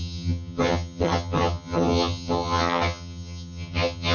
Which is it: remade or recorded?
remade